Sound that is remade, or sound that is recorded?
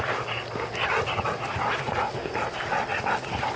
recorded